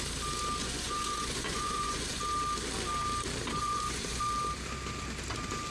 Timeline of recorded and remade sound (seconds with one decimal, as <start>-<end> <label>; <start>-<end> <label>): 0.0-0.6 recorded; 0.6-2.2 remade; 2.2-3.6 recorded; 3.6-4.2 remade; 4.2-5.7 recorded